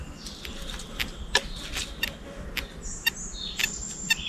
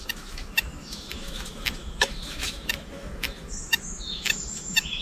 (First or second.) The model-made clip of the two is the second